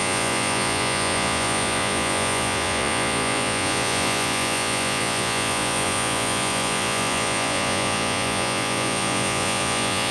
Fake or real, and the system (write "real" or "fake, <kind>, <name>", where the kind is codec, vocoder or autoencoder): fake, vocoder, Vocos